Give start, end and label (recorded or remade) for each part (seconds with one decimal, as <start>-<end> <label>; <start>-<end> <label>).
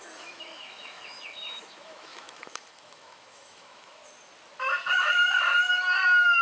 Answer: 0.0-4.0 remade; 4.0-6.4 recorded